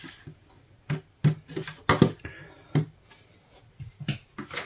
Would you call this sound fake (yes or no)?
no